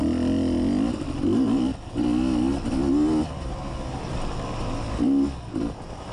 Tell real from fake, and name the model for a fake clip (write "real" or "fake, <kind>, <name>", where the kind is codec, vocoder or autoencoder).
real